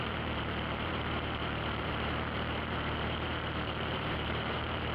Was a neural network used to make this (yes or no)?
yes